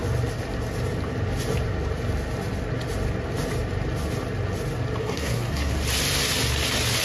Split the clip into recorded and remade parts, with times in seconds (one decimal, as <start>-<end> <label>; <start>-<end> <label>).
0.0-5.0 recorded; 5.0-5.7 remade; 5.7-7.0 recorded